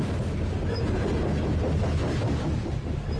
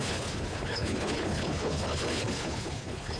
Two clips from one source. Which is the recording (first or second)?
first